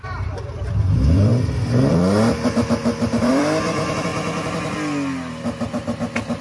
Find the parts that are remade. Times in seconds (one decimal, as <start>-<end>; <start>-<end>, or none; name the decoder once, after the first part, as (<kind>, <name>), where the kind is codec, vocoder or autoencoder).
0.0-1.3 (vocoder, BigVGAN v2); 1.9-4.1; 5.3-6.4